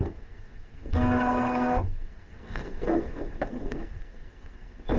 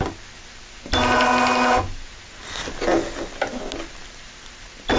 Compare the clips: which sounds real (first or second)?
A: second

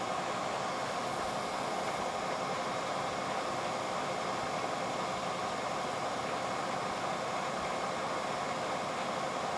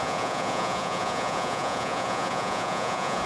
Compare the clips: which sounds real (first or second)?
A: first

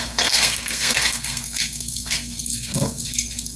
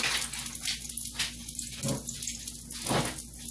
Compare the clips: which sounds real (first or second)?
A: second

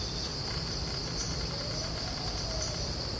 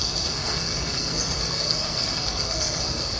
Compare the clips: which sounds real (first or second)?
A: first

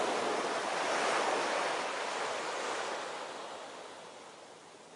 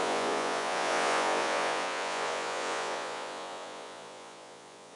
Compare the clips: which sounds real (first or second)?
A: first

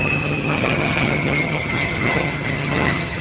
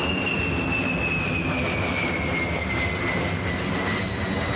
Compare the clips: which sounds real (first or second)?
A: second